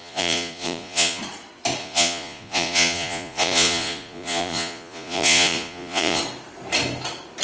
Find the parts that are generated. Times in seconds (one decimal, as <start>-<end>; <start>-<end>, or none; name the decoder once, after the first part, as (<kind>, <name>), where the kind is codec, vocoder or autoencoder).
0.0-1.2 (vocoder, Vocos); 1.8-6.2